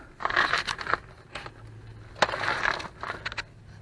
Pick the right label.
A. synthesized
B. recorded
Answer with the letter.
B